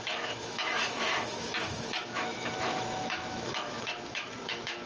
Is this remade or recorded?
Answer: remade